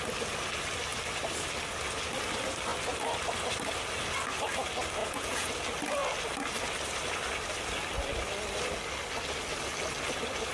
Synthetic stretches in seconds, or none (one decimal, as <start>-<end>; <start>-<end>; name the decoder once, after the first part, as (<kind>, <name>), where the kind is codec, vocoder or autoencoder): 5.0-5.5 (vocoder, Vocos)